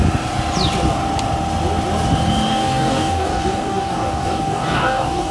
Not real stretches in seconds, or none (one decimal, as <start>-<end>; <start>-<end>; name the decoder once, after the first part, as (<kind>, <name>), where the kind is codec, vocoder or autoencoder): 2.5-5.3 (codec, DAC)